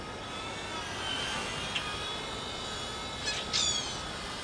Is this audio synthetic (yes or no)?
no